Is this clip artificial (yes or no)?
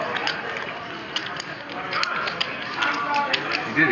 no